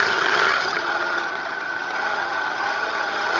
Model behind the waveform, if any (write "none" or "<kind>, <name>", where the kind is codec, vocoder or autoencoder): vocoder, HiFi-GAN